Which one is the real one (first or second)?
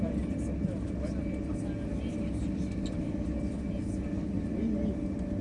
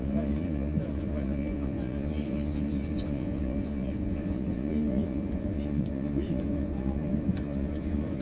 first